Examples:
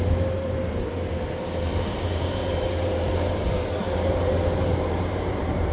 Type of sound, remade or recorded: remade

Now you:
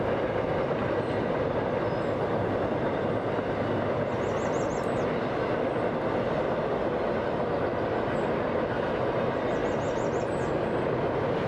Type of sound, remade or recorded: recorded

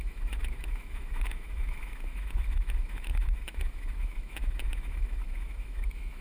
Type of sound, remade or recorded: remade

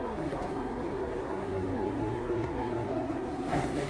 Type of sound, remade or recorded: remade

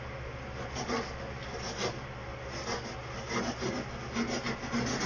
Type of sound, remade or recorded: recorded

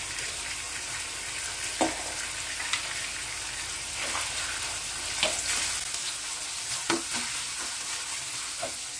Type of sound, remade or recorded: recorded